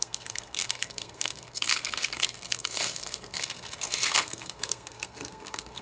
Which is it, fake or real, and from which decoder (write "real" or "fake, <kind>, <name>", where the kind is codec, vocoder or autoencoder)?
fake, codec, SNAC